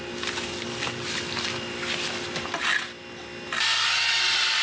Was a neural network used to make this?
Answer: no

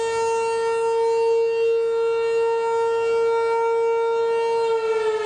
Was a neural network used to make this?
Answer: no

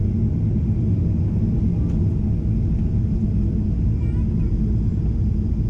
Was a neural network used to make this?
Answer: no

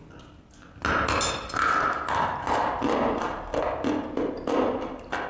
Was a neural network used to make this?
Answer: no